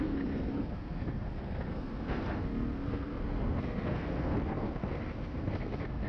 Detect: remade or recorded remade